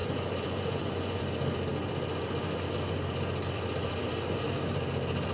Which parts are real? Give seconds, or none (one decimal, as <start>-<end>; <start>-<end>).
1.2-5.3